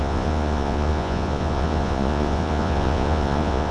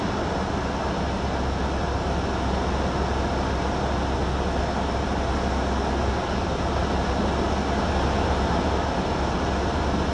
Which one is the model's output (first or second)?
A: first